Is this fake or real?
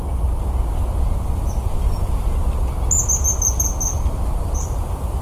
real